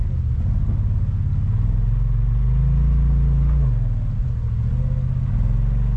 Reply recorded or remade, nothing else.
recorded